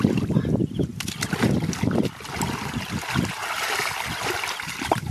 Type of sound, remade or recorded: recorded